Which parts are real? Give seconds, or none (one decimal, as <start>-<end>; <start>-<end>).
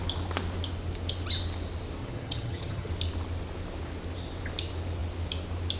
0.0-2.0; 2.9-5.8